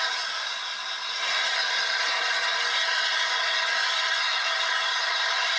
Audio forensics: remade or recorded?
recorded